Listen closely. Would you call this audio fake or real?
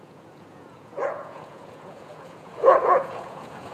fake